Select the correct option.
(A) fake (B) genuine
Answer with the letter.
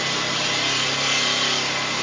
B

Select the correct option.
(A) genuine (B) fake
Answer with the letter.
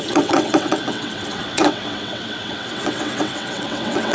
B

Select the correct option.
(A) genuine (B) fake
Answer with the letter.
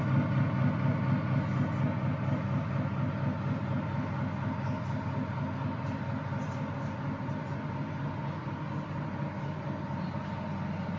A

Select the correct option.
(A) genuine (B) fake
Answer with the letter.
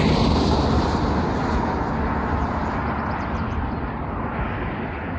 A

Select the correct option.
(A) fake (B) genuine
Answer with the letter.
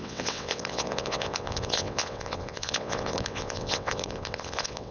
A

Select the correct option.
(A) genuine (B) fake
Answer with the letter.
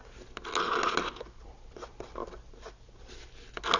A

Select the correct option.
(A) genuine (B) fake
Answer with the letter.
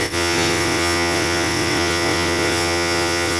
B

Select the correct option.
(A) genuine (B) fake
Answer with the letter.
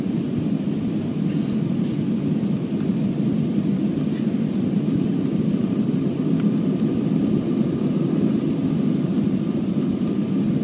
A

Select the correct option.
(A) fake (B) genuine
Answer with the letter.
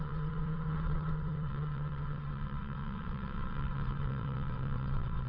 A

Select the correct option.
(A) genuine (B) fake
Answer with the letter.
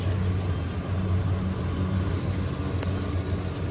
A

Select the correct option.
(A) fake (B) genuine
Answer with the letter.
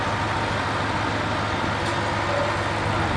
B